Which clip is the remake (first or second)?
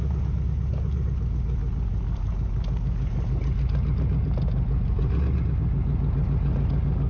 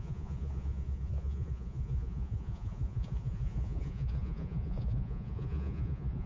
second